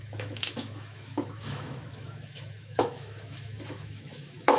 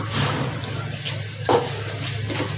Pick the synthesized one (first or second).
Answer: first